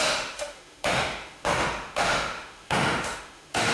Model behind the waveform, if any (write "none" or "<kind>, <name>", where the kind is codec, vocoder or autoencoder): autoencoder, DAC-VAE